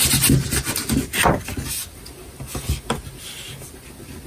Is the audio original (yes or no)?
yes